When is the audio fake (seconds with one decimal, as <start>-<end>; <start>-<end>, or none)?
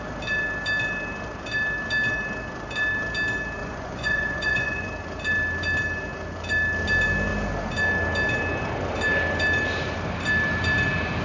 3.6-4.9